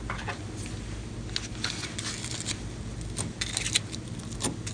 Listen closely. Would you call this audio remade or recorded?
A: recorded